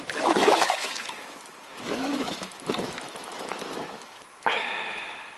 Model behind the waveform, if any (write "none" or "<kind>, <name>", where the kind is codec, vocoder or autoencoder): autoencoder, DAC-VAE